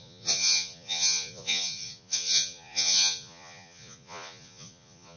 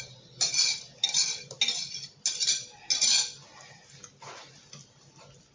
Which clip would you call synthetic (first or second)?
first